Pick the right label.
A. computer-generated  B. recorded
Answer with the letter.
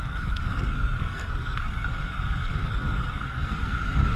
A